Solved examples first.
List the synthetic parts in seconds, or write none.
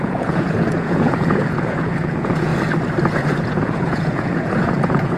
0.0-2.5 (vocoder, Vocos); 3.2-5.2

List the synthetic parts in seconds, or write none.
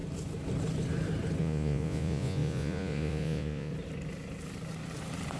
1.4-3.7 (vocoder, Vocos)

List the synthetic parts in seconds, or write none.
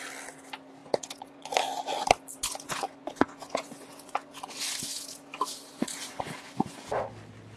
0.8-1.5 (vocoder, Vocos); 2.4-7.0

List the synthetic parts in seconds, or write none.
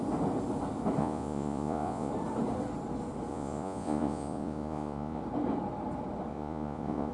1.0-2.1 (vocoder, Vocos); 3.3-5.2; 6.3-7.1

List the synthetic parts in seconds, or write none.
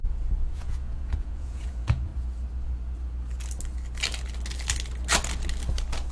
0.0-2.1 (vocoder, Vocos)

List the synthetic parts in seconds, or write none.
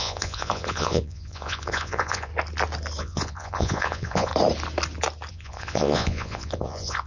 0.0-2.3 (vocoder, Vocos); 3.0-4.3; 5.3-7.1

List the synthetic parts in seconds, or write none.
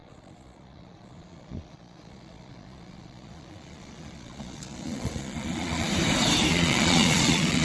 0.0-5.9 (vocoder, Vocos); 6.5-7.6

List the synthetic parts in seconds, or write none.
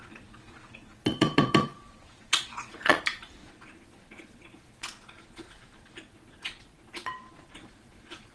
0.0-3.0 (vocoder, Vocos); 3.4-8.3